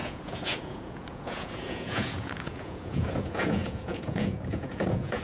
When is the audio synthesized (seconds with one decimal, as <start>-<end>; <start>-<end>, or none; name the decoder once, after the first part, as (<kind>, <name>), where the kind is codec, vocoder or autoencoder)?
0.0-5.2 (vocoder, Vocos)